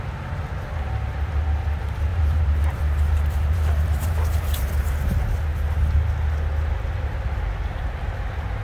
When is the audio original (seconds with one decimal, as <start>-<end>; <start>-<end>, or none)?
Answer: 0.0-2.1; 5.2-7.7